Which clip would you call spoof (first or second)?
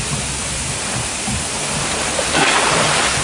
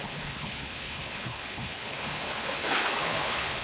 second